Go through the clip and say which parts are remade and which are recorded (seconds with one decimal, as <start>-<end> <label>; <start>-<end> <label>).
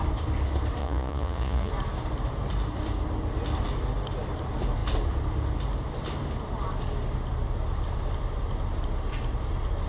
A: 0.0-0.8 recorded; 0.8-1.7 remade; 1.7-9.9 recorded